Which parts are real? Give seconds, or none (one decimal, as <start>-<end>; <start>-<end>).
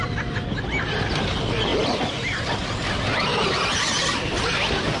0.0-5.0